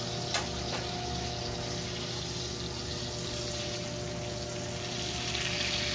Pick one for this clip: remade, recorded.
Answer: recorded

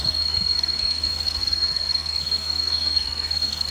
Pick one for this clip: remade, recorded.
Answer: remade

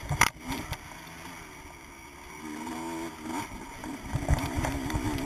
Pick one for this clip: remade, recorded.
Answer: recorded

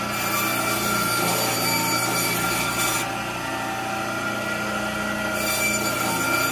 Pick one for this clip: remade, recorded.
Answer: recorded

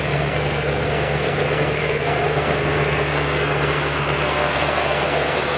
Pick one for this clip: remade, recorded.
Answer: remade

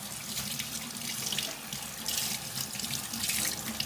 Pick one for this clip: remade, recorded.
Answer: recorded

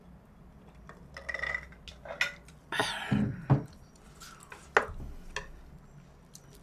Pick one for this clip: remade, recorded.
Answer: recorded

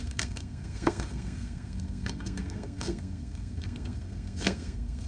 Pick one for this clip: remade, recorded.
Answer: remade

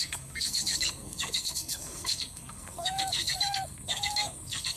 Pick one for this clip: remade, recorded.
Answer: remade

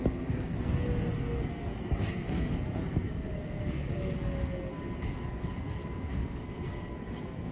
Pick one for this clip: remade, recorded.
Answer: remade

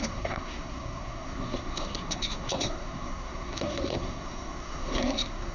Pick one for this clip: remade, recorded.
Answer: remade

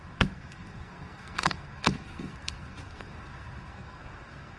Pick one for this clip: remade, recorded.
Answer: remade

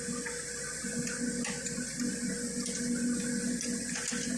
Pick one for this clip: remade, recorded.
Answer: recorded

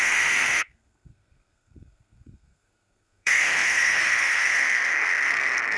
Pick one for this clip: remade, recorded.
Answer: remade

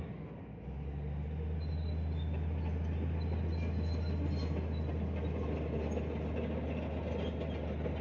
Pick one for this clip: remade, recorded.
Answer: recorded